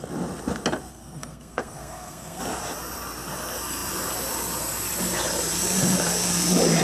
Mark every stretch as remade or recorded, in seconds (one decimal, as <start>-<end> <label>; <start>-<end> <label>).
0.0-0.9 recorded; 0.9-2.4 remade; 2.4-6.8 recorded